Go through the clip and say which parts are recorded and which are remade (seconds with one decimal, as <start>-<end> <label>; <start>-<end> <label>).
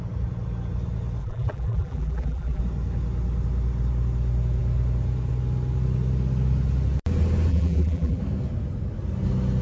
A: 0.0-1.2 recorded; 1.2-2.6 remade; 2.6-7.5 recorded; 7.5-8.2 remade; 8.2-9.6 recorded